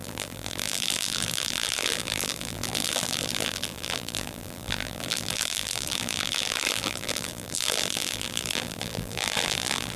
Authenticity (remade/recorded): remade